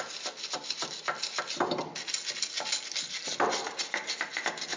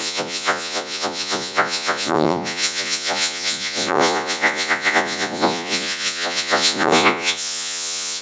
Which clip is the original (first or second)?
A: first